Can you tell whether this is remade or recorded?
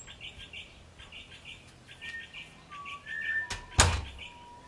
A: recorded